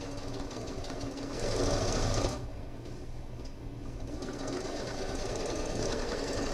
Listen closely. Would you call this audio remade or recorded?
remade